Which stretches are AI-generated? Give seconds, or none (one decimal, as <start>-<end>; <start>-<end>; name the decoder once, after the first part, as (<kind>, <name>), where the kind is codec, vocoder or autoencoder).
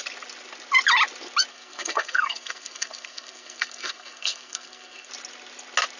1.5-5.1 (codec, SNAC)